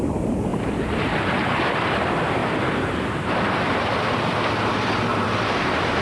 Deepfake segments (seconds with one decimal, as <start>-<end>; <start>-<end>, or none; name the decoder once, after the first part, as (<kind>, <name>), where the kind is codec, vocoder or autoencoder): 0.5-1.5 (vocoder, BigVGAN v2); 2.4-3.3; 5.1-6.0